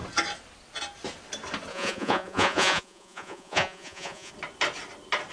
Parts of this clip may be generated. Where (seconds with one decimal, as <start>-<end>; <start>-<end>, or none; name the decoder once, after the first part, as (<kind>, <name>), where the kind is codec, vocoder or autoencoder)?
1.7-4.3 (vocoder, Vocos)